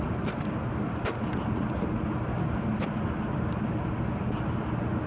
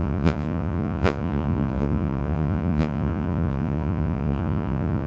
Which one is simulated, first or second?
second